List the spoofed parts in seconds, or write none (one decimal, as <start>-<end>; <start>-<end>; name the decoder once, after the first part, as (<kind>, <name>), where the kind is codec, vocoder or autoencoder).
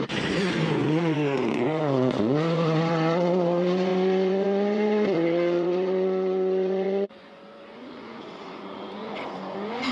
0.0-9.9 (vocoder, Vocos)